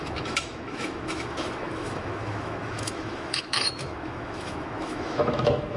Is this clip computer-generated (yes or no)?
yes